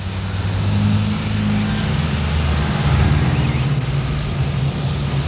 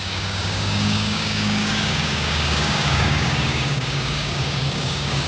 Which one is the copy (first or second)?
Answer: second